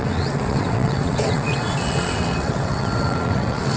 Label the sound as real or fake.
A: fake